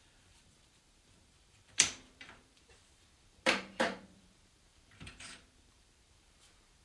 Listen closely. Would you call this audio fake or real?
fake